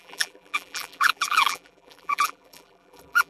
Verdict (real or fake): fake